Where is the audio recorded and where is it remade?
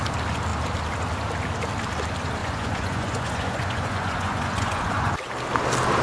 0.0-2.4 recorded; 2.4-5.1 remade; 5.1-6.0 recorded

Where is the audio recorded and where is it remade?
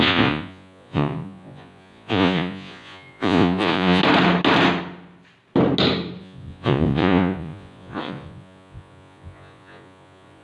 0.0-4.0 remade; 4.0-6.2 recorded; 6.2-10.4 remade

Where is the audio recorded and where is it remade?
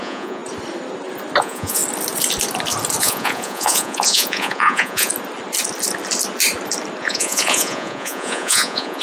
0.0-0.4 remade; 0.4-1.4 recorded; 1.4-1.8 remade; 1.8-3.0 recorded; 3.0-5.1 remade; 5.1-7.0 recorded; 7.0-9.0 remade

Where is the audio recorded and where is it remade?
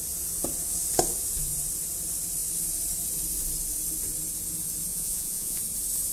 0.0-4.9 recorded; 4.9-5.6 remade; 5.6-6.1 recorded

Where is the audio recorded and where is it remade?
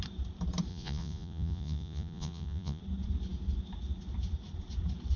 0.0-0.7 recorded; 0.7-2.8 remade; 2.8-5.2 recorded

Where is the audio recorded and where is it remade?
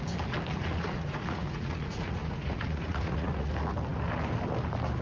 0.0-0.5 recorded; 0.5-3.5 remade; 3.5-5.0 recorded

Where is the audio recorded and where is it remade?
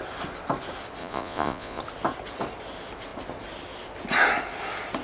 0.0-1.0 recorded; 1.0-1.8 remade; 1.8-5.0 recorded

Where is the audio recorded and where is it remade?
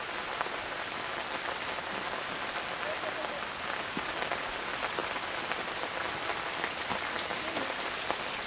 0.0-8.5 recorded